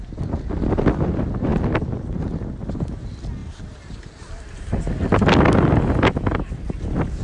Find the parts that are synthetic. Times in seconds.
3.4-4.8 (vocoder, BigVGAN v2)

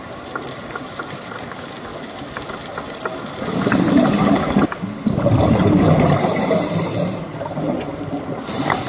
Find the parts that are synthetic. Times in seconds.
0.0-1.9 (vocoder, BigVGAN v2); 5.4-8.9